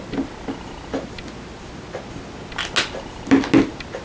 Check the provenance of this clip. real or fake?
real